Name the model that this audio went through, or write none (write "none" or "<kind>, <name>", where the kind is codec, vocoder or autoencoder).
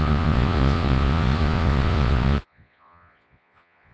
vocoder, Vocos